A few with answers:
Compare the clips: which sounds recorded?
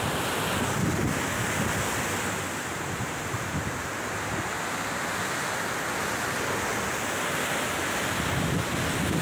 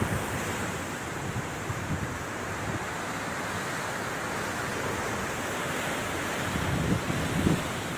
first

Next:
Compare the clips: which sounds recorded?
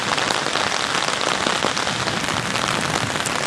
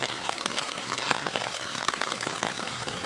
first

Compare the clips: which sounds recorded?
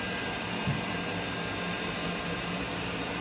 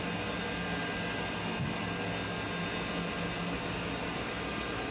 second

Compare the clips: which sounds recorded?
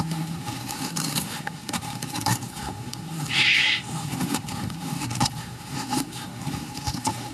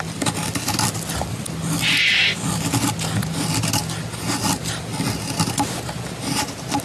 second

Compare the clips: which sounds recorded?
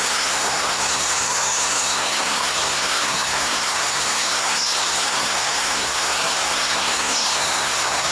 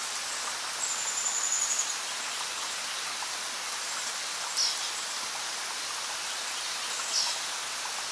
second